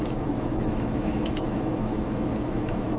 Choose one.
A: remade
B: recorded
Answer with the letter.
A